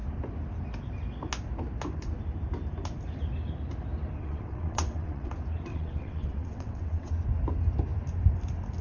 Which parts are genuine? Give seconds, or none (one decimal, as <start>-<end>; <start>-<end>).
0.0-4.2; 5.3-5.7; 7.1-8.8